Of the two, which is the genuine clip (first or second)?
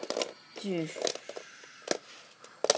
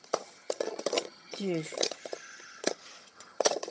first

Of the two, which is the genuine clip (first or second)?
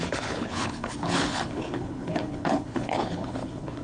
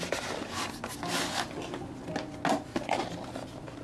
second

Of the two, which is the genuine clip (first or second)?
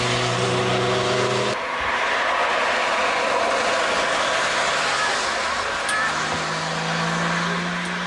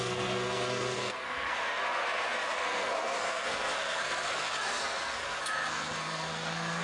first